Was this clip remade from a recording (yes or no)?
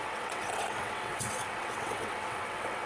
yes